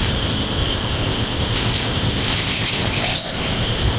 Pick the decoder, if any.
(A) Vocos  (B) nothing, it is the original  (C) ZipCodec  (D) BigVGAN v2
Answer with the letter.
C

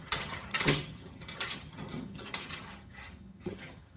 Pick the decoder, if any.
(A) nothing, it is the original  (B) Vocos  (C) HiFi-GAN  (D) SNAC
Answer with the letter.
C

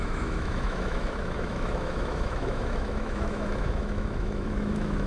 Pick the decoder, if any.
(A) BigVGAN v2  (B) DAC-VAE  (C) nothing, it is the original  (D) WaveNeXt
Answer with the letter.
B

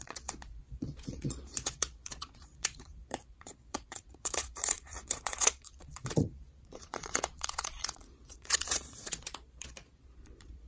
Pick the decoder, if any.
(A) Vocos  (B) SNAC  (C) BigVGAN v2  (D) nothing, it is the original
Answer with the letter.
A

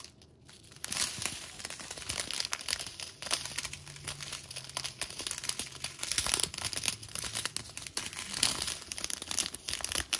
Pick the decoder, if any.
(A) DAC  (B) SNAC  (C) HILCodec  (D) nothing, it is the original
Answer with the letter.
D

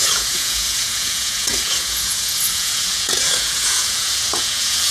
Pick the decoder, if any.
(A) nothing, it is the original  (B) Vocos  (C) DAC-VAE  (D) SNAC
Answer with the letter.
B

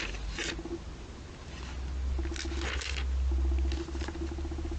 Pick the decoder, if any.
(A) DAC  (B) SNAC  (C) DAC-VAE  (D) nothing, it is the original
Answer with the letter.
D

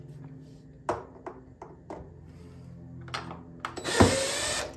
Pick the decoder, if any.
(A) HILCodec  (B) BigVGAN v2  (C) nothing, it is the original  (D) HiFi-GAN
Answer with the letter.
C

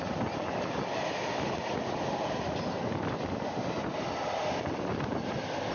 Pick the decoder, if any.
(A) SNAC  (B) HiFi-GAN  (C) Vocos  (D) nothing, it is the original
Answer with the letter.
D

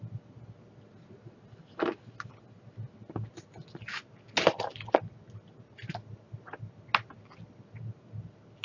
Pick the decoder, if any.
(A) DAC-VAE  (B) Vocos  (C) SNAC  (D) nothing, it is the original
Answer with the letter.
D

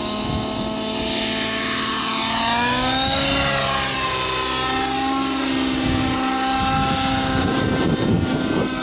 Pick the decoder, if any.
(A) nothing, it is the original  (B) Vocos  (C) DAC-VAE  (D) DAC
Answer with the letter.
A